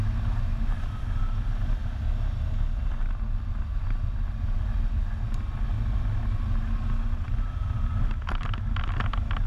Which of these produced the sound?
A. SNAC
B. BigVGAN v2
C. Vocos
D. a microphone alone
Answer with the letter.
D